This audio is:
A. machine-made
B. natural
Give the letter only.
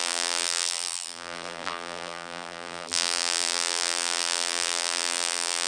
A